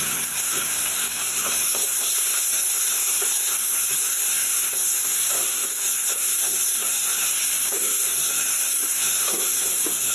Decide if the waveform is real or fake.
fake